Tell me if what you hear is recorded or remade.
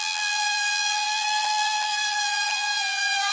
remade